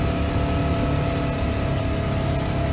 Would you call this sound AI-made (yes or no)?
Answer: no